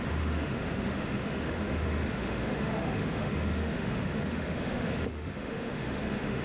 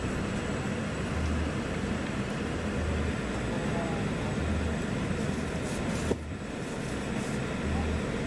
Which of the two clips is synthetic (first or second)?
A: first